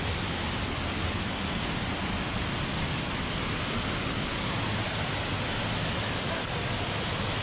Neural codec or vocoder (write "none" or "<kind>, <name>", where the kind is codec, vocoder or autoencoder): none